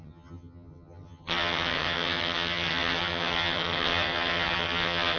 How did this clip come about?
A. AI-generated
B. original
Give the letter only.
A